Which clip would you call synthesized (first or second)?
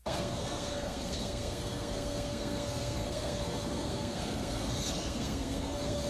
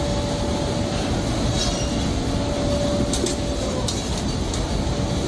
first